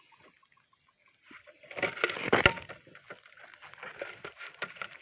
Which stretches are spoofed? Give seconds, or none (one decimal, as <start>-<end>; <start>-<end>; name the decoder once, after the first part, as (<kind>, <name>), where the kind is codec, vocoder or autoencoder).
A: none